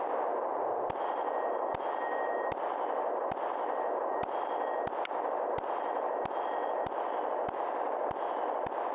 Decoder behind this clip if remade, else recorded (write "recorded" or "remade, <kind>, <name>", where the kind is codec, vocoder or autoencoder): recorded